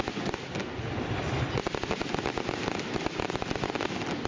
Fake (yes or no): no